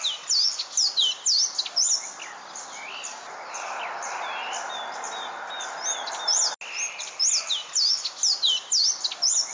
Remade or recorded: recorded